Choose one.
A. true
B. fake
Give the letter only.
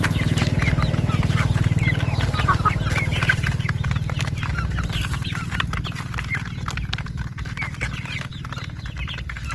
A